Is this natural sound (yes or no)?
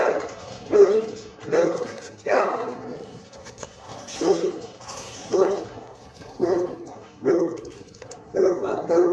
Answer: no